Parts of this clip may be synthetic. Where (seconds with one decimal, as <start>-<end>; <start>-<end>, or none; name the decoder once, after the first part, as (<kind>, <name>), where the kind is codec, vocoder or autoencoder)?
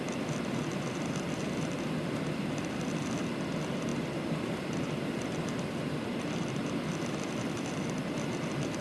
0.0-8.8 (vocoder, BigVGAN v2)